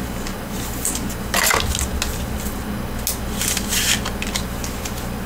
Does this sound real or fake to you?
real